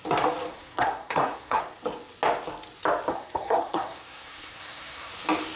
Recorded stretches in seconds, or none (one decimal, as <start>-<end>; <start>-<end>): 0.0-0.5; 1.6-3.1; 5.1-5.6

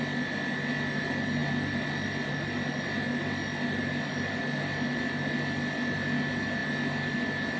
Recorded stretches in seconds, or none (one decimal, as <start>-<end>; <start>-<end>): 0.0-7.6

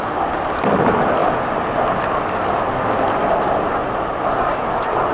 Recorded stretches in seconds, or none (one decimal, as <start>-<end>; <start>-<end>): 0.0-5.1

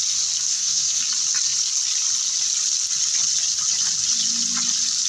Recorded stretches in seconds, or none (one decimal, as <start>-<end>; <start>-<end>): 0.0-0.5; 1.0-5.1

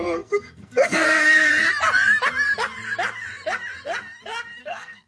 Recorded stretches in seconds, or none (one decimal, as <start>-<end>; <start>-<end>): 1.5-4.6

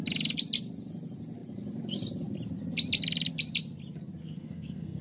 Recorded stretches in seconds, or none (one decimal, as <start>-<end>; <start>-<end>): 0.0-4.2

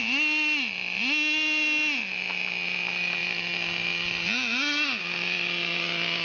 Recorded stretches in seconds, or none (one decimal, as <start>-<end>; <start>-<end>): 0.0-6.2